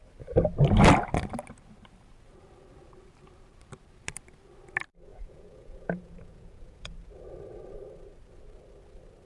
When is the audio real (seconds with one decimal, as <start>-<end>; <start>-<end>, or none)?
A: 0.0-5.1; 7.1-9.3